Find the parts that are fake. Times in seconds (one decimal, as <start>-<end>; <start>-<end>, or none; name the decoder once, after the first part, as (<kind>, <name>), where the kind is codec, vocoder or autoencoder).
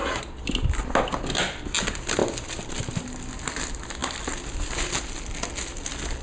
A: none